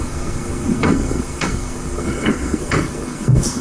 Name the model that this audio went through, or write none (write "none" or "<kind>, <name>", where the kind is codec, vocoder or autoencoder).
codec, SNAC